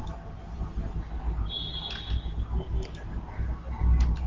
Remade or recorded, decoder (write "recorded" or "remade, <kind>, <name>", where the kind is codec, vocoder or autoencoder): recorded